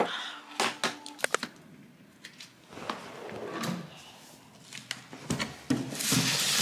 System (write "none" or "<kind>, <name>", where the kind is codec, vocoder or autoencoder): none